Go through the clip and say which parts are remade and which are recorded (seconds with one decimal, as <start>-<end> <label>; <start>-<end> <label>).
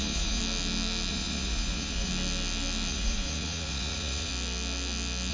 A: 0.0-0.4 remade; 0.4-1.1 recorded; 1.1-2.1 remade; 2.1-2.9 recorded; 2.9-4.3 remade; 4.3-5.3 recorded